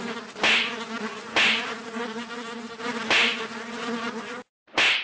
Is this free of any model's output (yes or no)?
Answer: yes